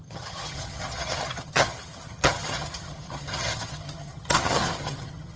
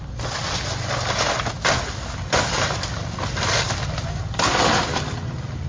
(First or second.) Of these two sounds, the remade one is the first